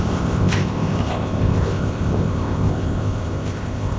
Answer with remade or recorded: remade